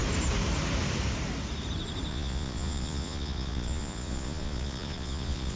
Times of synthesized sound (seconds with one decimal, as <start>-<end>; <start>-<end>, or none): 2.1-5.6

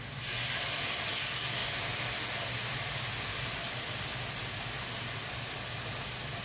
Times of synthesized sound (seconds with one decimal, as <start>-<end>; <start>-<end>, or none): none

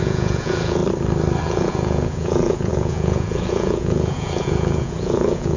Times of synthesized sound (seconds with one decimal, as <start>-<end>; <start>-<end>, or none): 0.0-0.8; 1.4-5.6

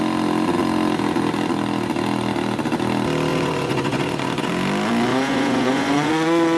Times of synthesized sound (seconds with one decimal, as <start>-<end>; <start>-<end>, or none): 3.3-4.5; 5.1-6.1